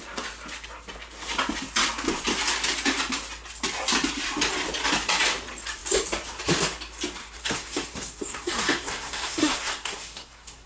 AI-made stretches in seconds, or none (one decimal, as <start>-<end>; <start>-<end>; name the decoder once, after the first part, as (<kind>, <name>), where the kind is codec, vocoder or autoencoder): 7.2-10.7 (codec, SNAC)